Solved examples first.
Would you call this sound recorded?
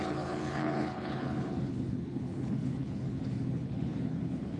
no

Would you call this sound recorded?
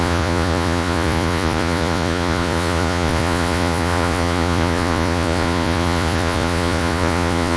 no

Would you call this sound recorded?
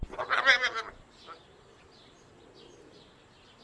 yes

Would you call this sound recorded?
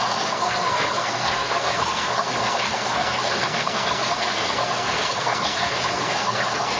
no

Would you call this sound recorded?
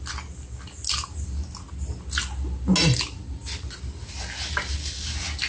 yes